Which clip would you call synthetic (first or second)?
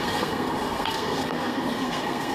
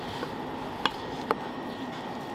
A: first